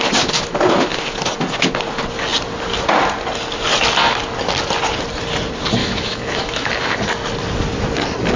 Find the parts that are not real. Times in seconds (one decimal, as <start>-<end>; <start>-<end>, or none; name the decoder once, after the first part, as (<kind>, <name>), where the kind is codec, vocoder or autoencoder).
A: 5.8-6.7 (autoencoder, DAC-VAE)